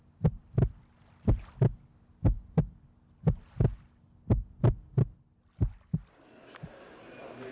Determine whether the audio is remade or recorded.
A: recorded